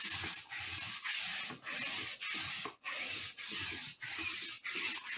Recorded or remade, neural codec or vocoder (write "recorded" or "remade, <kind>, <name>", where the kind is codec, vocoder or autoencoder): recorded